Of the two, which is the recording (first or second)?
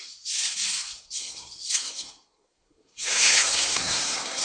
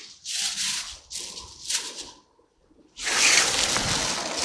second